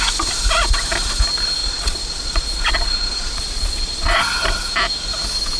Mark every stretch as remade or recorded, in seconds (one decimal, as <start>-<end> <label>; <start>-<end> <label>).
0.0-1.6 recorded; 1.6-4.2 remade; 4.2-5.6 recorded